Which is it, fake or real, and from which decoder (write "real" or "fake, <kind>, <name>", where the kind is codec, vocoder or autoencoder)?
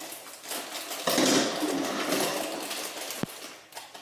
real